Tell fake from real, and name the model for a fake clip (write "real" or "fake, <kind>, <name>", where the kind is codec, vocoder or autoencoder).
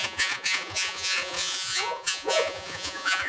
fake, vocoder, Vocos